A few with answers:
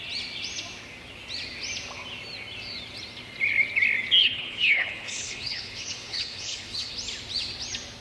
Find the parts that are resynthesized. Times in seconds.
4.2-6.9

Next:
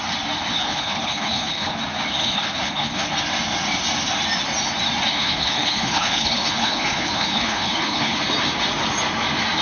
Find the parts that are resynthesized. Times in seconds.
0.5-1.8; 2.2-3.1; 5.1-8.2

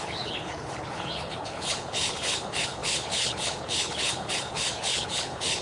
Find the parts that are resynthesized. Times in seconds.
0.0-5.6

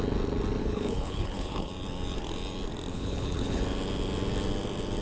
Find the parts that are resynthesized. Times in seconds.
0.6-1.7; 2.9-3.6